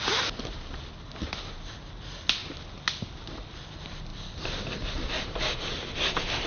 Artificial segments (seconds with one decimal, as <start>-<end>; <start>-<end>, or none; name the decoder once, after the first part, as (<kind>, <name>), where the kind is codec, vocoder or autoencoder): none